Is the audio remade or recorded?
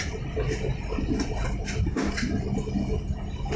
recorded